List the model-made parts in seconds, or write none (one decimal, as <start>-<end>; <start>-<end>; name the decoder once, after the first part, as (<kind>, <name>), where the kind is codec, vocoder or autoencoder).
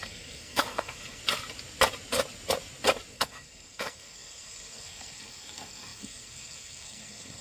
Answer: 0.0-1.2 (codec, SNAC); 3.1-7.4